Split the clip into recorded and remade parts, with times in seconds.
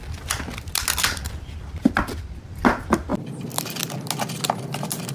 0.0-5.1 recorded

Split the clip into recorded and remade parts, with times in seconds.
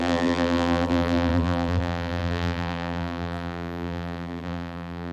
0.0-5.1 remade